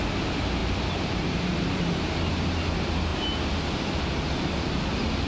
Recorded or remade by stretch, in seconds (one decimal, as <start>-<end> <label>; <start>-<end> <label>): 0.0-5.3 recorded